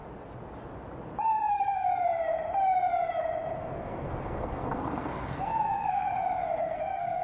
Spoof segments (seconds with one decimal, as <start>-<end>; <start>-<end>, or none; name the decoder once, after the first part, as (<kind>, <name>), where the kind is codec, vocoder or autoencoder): 1.5-1.9 (codec, SNAC); 3.6-6.1; 6.6-7.2